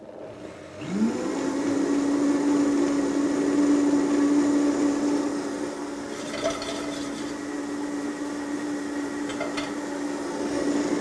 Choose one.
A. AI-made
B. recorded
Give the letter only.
B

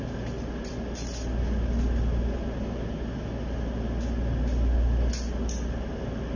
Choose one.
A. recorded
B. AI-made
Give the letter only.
A